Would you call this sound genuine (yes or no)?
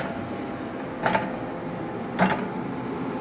yes